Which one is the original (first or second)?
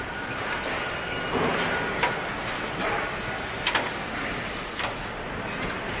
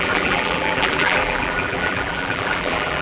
first